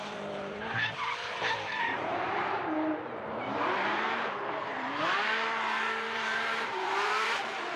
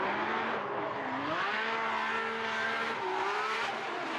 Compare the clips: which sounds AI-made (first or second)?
first